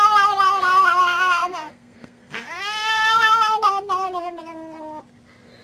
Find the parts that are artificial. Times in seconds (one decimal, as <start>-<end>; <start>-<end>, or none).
1.0-4.4